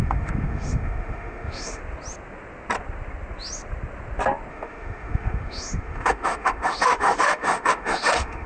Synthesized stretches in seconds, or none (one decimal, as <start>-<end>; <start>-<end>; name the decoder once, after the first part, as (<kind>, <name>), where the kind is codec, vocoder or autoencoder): 0.0-1.8 (autoencoder, DAC-VAE); 4.5-8.5